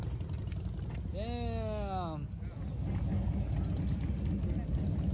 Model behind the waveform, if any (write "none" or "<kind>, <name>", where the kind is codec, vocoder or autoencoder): none